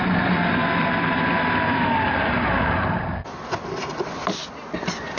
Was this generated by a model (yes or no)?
no